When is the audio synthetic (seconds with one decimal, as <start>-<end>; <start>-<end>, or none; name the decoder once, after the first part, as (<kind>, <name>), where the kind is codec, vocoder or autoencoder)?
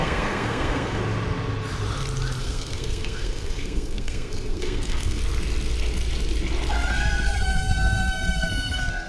0.0-1.0 (codec, SNAC); 2.4-5.2; 6.7-9.1